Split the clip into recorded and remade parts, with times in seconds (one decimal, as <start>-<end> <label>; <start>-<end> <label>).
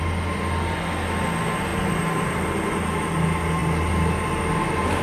0.0-5.0 recorded